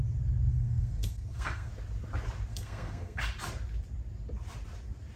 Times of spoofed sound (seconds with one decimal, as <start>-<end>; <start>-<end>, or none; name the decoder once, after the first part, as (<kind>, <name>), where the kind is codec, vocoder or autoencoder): 0.5-1.7 (codec, SNAC); 2.5-3.2